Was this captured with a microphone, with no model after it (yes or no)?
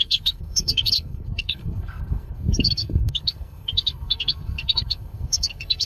no